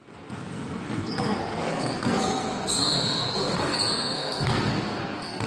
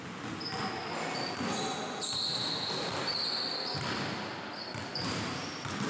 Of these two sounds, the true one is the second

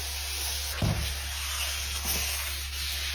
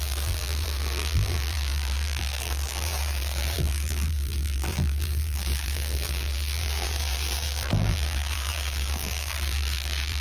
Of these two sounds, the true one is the first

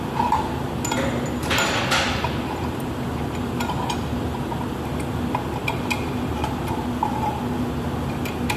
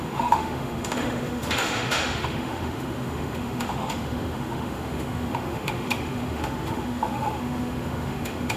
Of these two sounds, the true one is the first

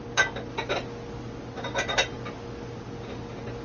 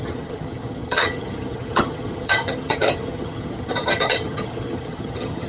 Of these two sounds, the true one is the first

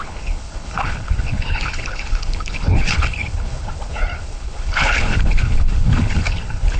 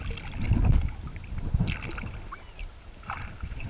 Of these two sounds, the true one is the second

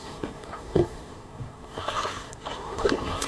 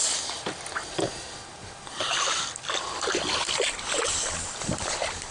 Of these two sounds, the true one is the second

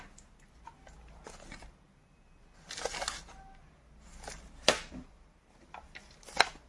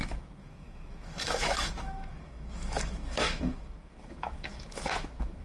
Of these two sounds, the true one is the first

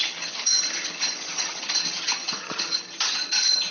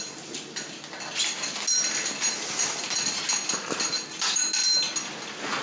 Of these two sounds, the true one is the second